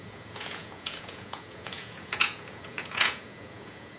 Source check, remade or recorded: remade